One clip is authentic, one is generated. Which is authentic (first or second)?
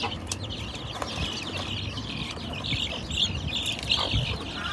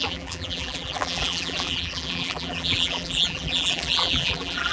first